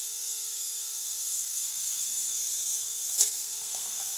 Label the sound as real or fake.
fake